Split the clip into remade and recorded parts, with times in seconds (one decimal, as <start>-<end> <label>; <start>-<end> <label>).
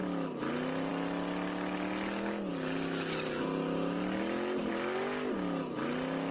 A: 0.0-6.3 recorded